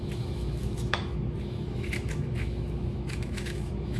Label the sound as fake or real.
fake